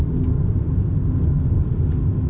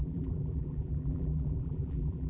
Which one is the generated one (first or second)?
second